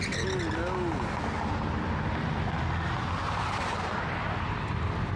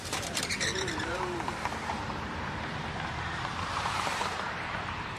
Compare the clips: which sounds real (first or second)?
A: first